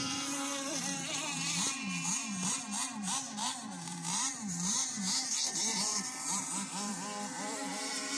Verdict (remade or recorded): remade